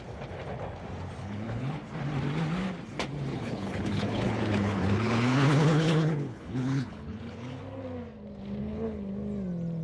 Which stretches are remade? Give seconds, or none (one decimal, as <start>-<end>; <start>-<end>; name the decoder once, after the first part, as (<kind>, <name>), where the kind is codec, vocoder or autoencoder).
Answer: 1.2-1.8 (codec, HILCodec); 3.3-7.6; 8.6-9.1